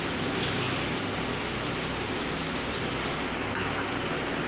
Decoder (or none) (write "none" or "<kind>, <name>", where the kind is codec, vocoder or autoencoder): none